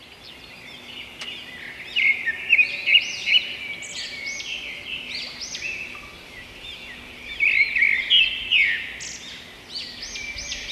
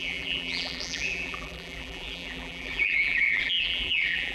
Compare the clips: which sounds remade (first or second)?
second